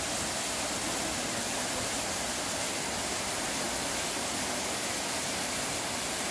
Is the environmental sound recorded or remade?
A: recorded